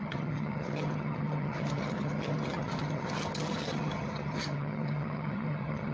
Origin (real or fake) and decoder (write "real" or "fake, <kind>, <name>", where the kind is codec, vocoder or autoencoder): fake, vocoder, HiFi-GAN